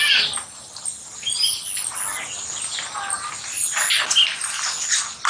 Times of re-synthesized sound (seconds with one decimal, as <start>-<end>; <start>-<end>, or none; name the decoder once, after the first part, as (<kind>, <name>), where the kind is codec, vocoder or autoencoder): none